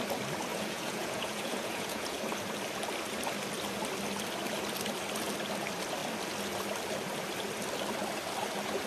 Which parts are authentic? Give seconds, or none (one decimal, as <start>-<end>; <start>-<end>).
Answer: 0.0-0.5; 2.2-8.9